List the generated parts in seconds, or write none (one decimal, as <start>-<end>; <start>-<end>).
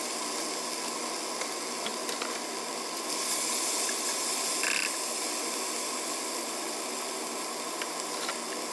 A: none